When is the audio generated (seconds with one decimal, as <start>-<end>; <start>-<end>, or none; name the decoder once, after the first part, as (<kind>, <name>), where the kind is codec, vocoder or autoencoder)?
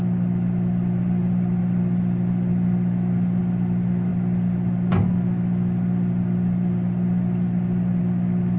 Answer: none